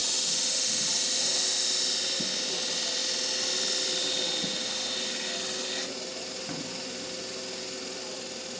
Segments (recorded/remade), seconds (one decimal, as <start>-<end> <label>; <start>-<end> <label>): 0.0-8.6 recorded